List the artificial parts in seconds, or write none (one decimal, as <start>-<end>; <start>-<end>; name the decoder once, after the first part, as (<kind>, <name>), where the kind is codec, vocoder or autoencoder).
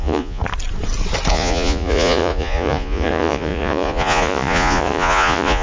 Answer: 0.0-0.4 (vocoder, Vocos); 1.3-5.6